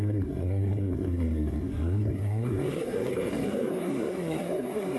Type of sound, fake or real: fake